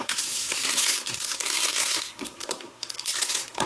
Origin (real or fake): fake